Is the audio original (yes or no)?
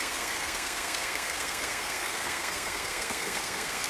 no